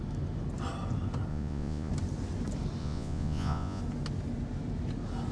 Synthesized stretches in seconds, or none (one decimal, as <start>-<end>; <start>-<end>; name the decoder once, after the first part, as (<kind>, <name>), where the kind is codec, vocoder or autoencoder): 1.3-1.9 (vocoder, Vocos); 2.8-3.8